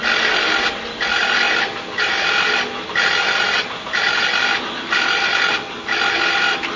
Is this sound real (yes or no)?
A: yes